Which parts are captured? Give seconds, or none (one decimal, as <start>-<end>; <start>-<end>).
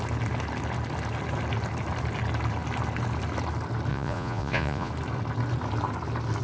0.0-3.9; 4.9-6.4